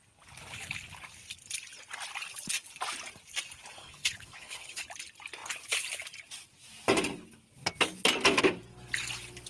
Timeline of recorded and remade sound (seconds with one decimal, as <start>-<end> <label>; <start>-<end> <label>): 0.0-3.8 recorded; 3.8-4.8 remade; 4.8-9.5 recorded